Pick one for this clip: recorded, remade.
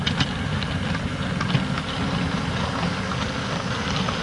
recorded